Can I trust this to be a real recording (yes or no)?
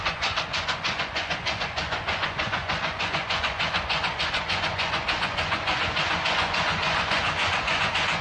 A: no